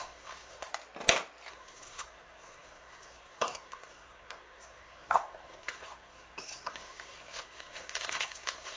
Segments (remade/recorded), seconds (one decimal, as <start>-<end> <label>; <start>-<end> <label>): 0.0-0.7 remade; 0.7-1.5 recorded; 1.5-8.8 remade